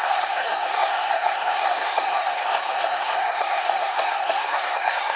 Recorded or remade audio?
remade